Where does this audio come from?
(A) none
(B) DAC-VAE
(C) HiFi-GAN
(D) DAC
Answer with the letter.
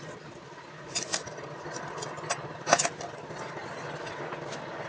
A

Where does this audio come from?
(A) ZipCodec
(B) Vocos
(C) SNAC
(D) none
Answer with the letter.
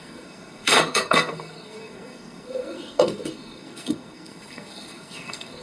C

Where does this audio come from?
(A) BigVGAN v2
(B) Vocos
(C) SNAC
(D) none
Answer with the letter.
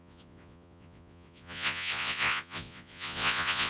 B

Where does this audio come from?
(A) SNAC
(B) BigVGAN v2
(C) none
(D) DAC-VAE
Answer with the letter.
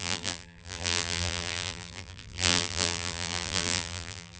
B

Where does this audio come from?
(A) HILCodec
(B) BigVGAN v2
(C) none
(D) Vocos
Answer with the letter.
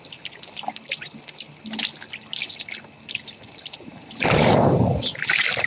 C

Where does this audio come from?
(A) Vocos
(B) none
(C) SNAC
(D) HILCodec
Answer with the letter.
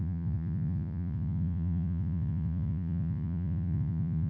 A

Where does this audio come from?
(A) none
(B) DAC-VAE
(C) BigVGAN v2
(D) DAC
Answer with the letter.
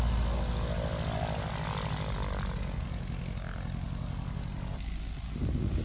A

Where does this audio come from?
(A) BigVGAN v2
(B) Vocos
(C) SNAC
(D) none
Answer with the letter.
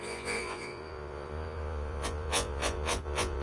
B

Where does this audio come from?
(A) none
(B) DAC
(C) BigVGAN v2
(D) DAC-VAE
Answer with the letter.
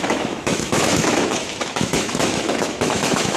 D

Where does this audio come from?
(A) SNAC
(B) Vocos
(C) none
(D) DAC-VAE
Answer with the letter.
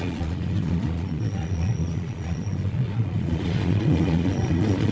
B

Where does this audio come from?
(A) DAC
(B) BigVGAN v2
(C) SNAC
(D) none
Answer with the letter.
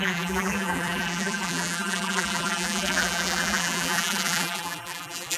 B